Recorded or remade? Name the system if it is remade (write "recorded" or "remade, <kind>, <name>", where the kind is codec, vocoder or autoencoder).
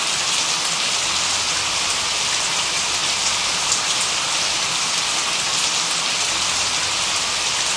recorded